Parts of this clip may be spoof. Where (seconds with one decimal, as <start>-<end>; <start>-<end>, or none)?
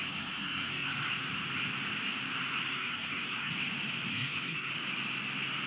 0.0-0.9; 2.7-3.5; 4.1-4.7